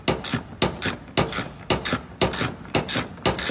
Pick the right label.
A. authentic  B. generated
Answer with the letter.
A